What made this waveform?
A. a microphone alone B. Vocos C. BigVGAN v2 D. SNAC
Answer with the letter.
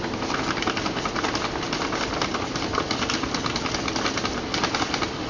A